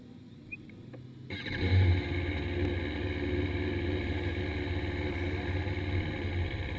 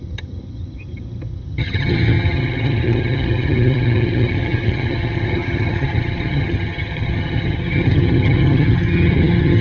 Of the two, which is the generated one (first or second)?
second